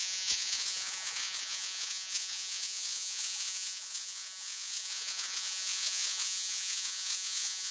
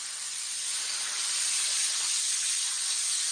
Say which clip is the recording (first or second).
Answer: second